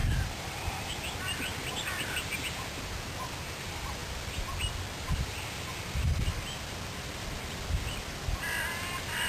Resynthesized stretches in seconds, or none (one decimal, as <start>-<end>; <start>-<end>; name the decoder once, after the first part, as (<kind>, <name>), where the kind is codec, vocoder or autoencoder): none

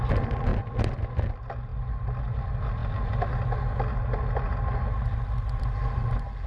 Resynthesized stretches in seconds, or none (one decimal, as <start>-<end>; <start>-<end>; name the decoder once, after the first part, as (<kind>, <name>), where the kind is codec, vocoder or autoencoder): none

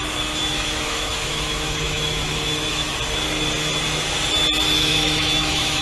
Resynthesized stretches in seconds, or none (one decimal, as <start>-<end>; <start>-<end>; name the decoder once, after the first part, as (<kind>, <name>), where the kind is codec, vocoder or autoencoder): 0.4-2.9 (autoencoder, DAC-VAE); 4.8-5.8